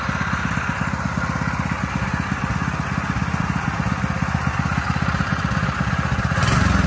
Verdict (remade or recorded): recorded